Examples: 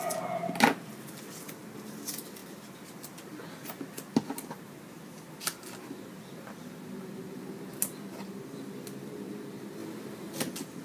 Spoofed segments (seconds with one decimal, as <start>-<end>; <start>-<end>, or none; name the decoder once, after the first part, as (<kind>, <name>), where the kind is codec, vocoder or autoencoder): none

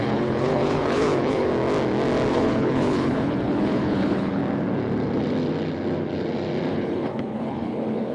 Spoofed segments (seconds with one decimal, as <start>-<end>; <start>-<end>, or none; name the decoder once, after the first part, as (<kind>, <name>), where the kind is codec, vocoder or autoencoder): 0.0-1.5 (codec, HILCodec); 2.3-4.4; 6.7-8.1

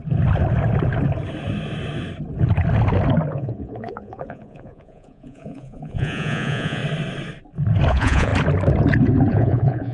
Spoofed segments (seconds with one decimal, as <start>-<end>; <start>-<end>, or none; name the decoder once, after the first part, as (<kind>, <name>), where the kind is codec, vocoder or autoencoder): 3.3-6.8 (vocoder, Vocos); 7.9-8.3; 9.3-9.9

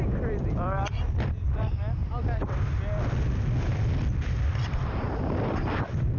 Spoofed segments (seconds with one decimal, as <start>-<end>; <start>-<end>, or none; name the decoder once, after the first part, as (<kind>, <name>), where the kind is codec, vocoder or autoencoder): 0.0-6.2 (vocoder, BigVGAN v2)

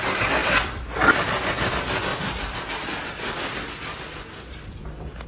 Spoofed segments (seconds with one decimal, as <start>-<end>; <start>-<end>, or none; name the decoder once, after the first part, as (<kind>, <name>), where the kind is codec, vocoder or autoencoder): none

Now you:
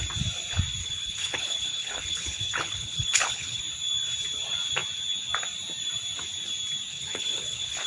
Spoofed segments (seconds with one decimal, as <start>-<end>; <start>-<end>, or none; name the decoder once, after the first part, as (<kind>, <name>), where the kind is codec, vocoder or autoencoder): 0.8-3.6 (codec, HILCodec); 6.9-7.9

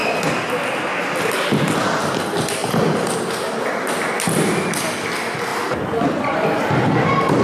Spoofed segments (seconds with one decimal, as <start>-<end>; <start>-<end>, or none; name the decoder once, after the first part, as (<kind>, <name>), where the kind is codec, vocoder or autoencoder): none

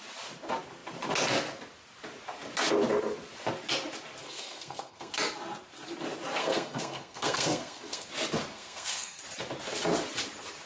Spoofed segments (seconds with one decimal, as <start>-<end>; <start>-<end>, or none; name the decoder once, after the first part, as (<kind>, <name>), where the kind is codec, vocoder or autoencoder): 4.2-5.1 (codec, SNAC); 6.4-8.1; 8.5-9.2